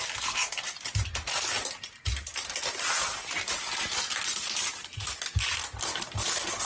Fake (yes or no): no